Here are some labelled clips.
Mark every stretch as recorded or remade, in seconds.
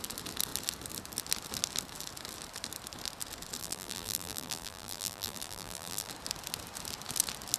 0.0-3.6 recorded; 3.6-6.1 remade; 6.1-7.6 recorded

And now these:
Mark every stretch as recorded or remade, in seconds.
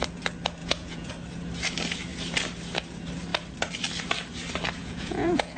0.0-0.6 recorded; 0.6-1.1 remade; 1.1-4.8 recorded; 4.8-5.6 remade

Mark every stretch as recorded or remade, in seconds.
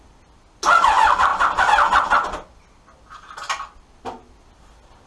0.0-5.1 recorded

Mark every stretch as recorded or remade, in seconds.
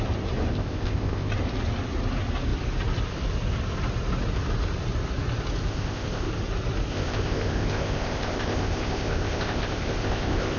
0.0-0.5 recorded; 0.5-1.3 remade; 1.3-5.7 recorded; 5.7-6.3 remade; 6.3-6.9 recorded; 6.9-10.6 remade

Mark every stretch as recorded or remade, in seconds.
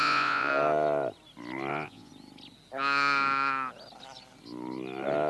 0.0-0.5 remade; 0.5-1.7 recorded; 1.7-2.1 remade; 2.1-5.3 recorded